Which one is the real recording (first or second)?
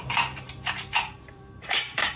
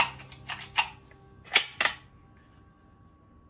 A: second